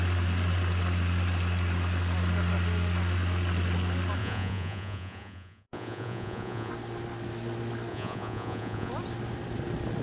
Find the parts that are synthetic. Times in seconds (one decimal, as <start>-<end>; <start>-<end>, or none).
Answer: 4.2-6.7; 7.9-8.9